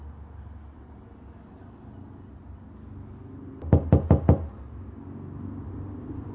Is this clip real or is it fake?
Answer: real